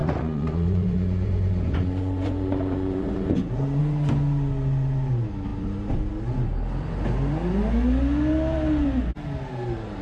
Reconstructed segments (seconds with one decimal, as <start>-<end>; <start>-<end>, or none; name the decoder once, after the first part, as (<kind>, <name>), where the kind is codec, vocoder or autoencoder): 0.0-3.8 (vocoder, Vocos)